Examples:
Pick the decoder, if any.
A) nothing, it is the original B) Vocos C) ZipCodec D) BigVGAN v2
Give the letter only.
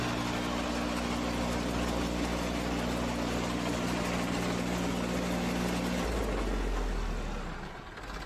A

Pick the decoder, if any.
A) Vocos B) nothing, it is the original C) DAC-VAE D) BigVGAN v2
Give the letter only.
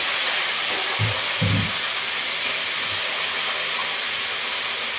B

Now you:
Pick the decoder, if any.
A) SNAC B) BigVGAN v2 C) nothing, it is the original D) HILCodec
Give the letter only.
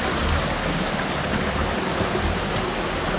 C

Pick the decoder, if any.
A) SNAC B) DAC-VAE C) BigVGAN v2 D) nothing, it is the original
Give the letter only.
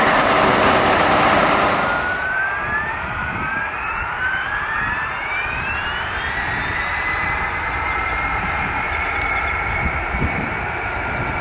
C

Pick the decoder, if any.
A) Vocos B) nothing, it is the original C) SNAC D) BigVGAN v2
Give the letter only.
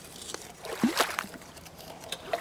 D